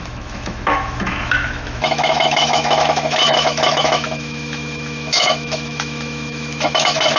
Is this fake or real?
fake